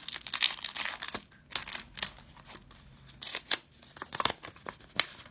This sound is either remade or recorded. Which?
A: recorded